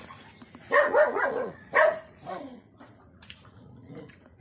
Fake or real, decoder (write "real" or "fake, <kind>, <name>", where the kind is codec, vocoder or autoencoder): fake, vocoder, Vocos